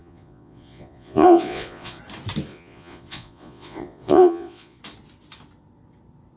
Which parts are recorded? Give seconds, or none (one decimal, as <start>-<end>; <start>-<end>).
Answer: 2.0-2.5; 4.8-6.4